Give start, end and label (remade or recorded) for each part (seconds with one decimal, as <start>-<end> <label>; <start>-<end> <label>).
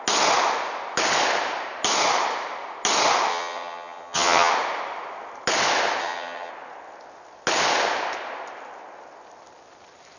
0.0-3.3 recorded; 3.3-4.5 remade; 4.5-6.0 recorded; 6.0-6.5 remade; 6.5-10.2 recorded